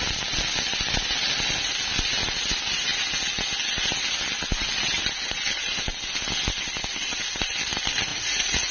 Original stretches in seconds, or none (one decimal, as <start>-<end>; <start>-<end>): 0.0-8.1